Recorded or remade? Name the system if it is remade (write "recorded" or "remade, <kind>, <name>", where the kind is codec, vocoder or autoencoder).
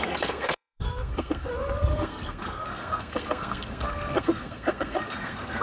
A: remade, codec, SNAC